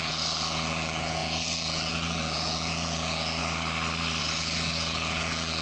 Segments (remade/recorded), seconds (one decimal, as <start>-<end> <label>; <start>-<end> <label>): 0.0-3.4 remade; 3.4-4.2 recorded; 4.2-5.6 remade